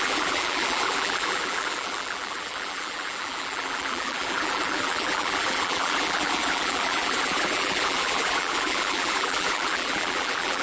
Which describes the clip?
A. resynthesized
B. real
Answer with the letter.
A